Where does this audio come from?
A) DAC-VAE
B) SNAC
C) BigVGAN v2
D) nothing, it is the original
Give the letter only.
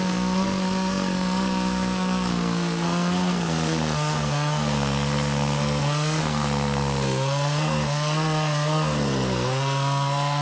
B